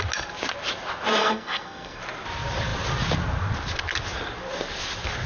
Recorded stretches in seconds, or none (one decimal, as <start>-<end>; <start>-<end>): 0.0-1.2; 2.0-5.3